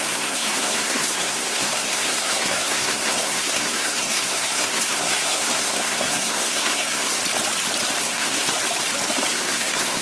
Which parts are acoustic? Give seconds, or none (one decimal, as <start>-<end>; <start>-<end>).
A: 7.2-8.0; 8.5-9.3